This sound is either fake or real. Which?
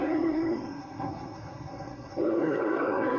fake